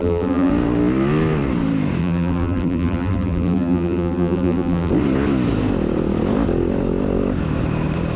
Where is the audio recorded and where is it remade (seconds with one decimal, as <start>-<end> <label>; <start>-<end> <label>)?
0.0-0.5 remade; 0.5-2.0 recorded; 2.0-4.9 remade; 4.9-8.2 recorded

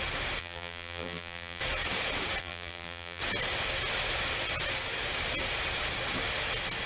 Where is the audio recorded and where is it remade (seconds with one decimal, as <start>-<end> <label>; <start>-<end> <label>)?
0.0-0.4 recorded; 0.4-1.6 remade; 1.6-2.4 recorded; 2.4-3.2 remade; 3.2-6.9 recorded

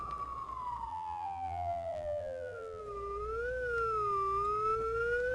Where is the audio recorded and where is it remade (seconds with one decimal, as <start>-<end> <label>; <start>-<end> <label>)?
0.0-0.9 recorded; 0.9-2.8 remade; 2.8-5.3 recorded

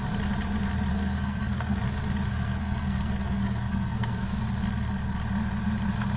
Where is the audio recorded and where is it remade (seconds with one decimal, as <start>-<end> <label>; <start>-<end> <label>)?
0.0-0.9 recorded; 0.9-1.8 remade; 1.8-2.3 recorded; 2.3-4.4 remade; 4.4-6.2 recorded

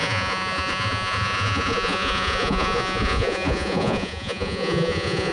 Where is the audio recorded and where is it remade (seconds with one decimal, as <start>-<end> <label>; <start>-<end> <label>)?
0.0-5.3 remade

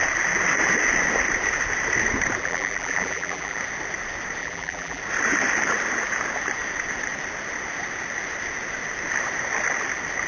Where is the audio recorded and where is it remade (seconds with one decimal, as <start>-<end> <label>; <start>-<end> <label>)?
0.0-2.4 recorded; 2.4-3.6 remade; 3.6-4.4 recorded; 4.4-5.0 remade; 5.0-10.3 recorded

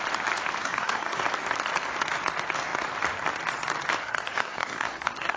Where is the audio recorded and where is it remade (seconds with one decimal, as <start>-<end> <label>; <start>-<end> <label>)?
0.0-0.6 recorded; 0.6-1.2 remade; 1.2-4.0 recorded; 4.0-5.4 remade

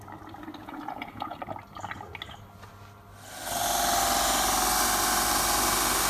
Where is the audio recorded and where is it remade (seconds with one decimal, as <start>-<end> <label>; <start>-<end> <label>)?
0.0-0.6 recorded; 0.6-1.4 remade; 1.4-6.1 recorded